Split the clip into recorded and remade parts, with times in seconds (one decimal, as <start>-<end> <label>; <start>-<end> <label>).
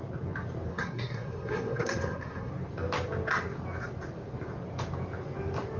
0.0-0.7 recorded; 0.7-2.5 remade; 2.5-5.8 recorded